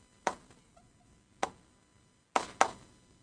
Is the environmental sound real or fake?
real